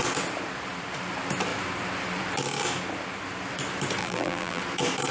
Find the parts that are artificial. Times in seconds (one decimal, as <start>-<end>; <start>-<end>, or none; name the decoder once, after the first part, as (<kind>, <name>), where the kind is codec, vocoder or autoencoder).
4.0-4.6 (vocoder, BigVGAN v2)